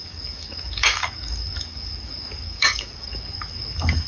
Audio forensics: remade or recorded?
remade